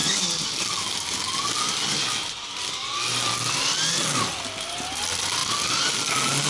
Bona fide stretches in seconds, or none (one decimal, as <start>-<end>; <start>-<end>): 0.0-6.5